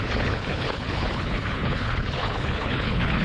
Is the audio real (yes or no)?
no